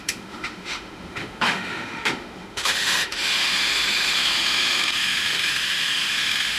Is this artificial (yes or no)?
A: yes